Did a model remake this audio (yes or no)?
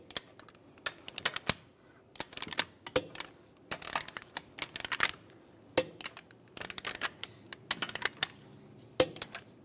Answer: no